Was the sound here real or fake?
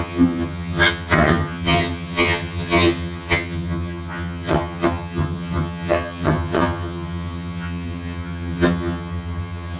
fake